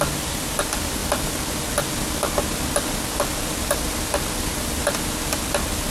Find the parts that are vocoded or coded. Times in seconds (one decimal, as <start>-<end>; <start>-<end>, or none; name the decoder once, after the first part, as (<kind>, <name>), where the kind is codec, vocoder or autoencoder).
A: none

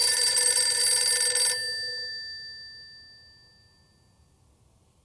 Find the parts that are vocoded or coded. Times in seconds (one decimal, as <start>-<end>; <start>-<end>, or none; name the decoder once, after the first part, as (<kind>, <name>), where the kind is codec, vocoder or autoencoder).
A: 0.0-0.8 (vocoder, BigVGAN v2)

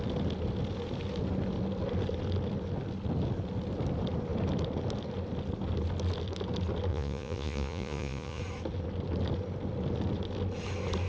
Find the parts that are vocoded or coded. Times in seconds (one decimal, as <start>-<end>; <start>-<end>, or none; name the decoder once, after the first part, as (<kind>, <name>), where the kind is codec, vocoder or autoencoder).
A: 6.9-8.4 (vocoder, Vocos)

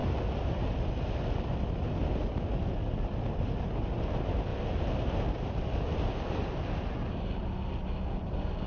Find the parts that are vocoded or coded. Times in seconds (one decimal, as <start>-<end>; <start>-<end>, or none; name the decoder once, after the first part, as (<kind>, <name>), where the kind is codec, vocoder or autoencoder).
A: none

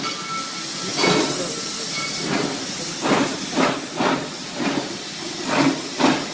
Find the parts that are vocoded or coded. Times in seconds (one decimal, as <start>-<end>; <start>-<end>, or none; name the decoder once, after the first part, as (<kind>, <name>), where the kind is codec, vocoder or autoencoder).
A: none

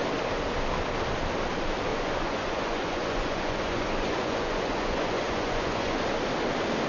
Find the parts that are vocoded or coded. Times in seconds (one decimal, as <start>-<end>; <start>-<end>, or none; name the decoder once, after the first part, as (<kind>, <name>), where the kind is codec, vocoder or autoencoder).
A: 1.9-6.0 (vocoder, Vocos)

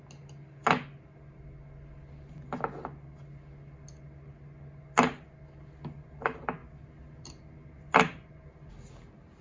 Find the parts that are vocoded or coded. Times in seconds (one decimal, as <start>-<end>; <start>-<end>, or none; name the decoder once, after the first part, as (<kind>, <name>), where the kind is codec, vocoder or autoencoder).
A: none